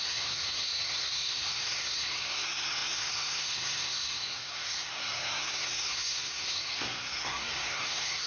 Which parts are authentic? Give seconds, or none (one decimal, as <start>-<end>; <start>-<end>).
none